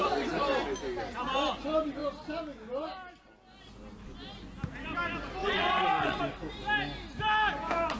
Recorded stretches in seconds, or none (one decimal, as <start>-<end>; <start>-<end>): 0.0-5.4; 6.2-8.0